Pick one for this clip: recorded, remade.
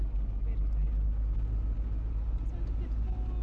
recorded